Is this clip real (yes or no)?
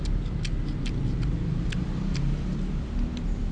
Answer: yes